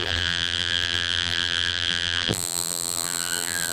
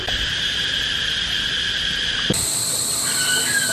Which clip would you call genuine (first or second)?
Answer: second